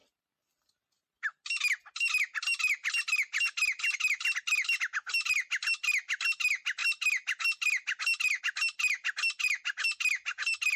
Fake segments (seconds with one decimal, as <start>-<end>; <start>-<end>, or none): none